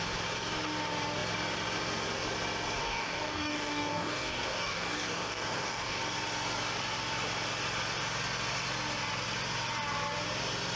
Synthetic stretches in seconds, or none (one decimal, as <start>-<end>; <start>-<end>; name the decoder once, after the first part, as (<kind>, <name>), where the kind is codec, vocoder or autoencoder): 2.8-6.0 (codec, DAC)